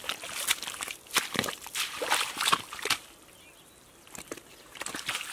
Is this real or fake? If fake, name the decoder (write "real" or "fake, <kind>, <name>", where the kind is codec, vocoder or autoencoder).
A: real